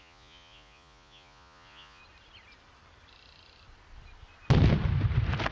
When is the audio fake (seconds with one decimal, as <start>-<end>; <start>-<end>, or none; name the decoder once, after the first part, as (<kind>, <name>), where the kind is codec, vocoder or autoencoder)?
0.0-2.0 (vocoder, Vocos)